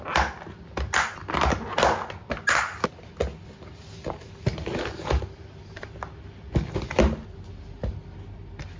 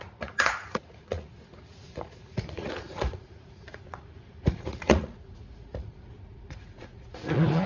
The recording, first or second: first